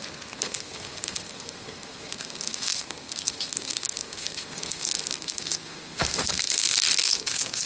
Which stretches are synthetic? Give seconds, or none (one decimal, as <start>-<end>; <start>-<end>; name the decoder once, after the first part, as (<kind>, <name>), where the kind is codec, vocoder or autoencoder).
0.0-7.7 (codec, SNAC)